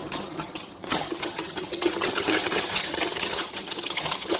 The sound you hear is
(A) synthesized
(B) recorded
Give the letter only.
A